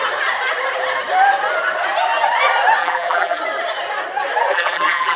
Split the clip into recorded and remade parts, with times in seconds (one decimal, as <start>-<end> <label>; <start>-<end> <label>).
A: 0.0-2.8 recorded; 2.8-3.4 remade; 3.4-4.5 recorded; 4.5-5.2 remade